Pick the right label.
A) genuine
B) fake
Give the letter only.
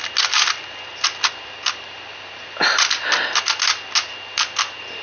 A